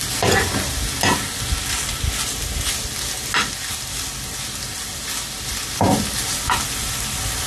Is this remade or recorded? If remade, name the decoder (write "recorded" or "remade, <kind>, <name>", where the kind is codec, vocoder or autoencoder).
recorded